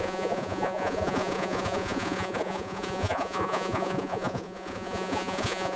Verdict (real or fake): fake